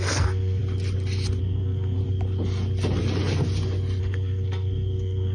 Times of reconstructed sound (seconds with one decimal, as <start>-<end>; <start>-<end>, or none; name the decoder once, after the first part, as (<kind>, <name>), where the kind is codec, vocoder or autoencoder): 0.0-0.6 (codec, SNAC); 1.4-2.0; 4.0-5.3

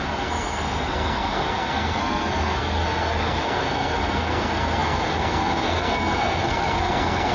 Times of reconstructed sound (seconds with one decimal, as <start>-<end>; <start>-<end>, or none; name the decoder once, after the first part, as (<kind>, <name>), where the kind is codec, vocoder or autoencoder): 0.0-7.3 (codec, SNAC)

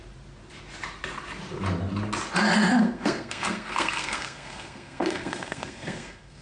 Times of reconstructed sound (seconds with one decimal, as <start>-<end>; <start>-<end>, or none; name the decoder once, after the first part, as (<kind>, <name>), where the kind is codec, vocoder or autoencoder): 2.7-6.4 (codec, SNAC)

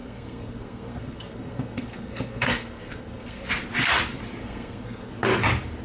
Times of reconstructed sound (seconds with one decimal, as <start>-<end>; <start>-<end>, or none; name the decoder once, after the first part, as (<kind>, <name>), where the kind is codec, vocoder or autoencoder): 0.0-3.5 (codec, SNAC); 4.4-5.1

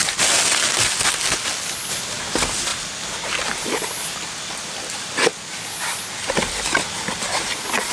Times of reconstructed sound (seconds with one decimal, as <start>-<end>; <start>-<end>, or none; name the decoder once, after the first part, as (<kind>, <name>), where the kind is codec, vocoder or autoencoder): none

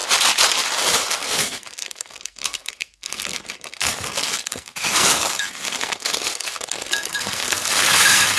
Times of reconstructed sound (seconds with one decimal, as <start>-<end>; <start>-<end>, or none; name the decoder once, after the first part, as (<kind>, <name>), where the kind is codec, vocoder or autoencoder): 1.1-8.4 (codec, SNAC)